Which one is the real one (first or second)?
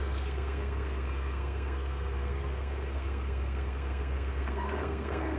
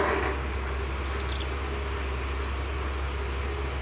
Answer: second